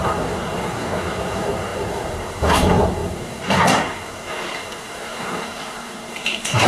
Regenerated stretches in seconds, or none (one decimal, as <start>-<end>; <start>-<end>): 0.0-6.7